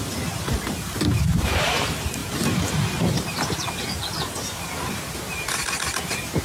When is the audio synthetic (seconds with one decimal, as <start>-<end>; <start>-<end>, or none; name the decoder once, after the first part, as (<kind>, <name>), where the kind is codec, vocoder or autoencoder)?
0.0-6.4 (vocoder, BigVGAN v2)